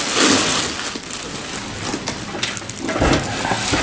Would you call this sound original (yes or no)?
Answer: yes